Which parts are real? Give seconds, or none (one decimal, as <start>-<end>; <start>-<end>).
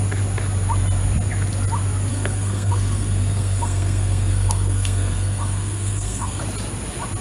0.0-2.1; 6.4-7.2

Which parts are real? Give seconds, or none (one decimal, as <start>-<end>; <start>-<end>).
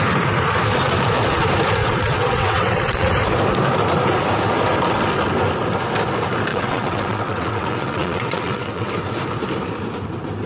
0.0-1.8; 3.1-6.5; 8.9-10.5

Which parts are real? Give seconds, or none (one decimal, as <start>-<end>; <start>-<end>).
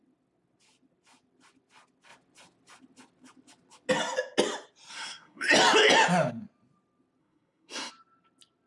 0.0-4.9; 5.5-7.2; 7.9-8.7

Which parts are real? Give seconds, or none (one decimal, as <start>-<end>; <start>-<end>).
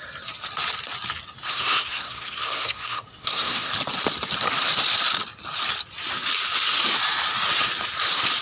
0.0-1.5; 3.7-8.4